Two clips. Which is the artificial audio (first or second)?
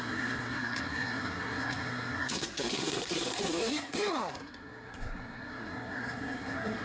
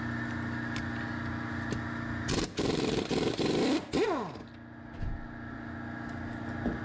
first